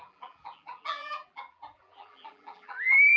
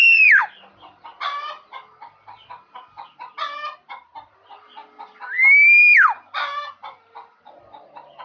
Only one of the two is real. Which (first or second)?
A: second